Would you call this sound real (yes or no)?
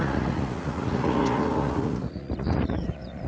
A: no